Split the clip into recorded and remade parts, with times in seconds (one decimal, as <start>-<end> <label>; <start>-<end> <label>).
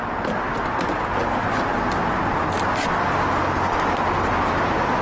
0.0-1.7 recorded; 1.7-4.3 remade; 4.3-5.0 recorded